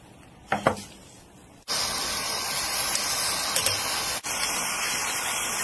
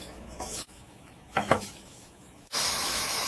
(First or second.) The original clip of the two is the first